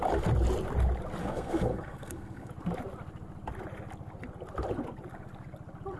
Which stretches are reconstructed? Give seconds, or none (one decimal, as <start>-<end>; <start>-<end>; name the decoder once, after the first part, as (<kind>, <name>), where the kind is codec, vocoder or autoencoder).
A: 1.2-2.5 (codec, SNAC)